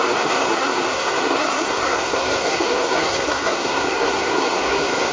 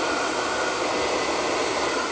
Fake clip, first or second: first